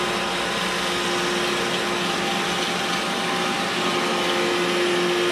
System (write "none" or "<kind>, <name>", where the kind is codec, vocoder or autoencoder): none